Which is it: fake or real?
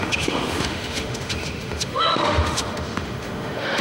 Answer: fake